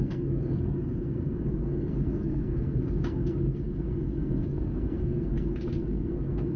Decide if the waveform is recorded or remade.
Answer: remade